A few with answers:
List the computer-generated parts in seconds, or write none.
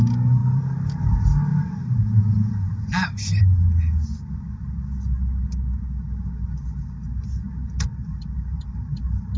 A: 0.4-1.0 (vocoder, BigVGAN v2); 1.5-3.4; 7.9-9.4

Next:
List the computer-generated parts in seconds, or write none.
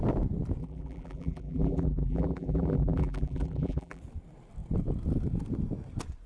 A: 0.6-4.0 (vocoder, BigVGAN v2)